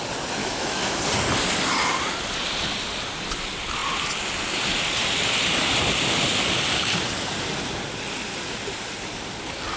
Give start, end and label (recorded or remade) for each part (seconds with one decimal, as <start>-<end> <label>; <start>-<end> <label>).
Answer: 0.0-0.4 recorded; 0.4-1.0 remade; 1.0-9.8 recorded